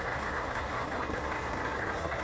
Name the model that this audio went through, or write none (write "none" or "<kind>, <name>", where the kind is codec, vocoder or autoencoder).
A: codec, SNAC